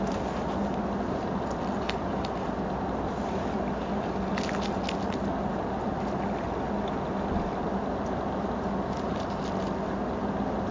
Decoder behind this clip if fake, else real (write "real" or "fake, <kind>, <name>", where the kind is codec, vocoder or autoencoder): real